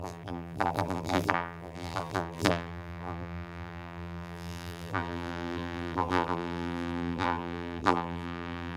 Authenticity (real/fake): fake